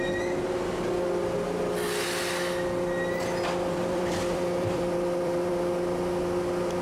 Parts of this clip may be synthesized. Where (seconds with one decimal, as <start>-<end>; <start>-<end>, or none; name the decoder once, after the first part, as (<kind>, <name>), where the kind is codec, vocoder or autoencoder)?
3.8-5.5 (vocoder, BigVGAN v2)